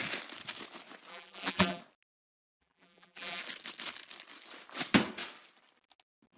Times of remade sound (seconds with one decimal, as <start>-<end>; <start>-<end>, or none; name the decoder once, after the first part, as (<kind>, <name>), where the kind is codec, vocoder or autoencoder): 1.1-1.8 (vocoder, BigVGAN v2); 2.5-3.4